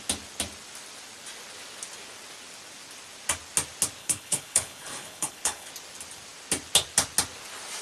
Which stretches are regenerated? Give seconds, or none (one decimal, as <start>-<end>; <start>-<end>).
4.0-5.7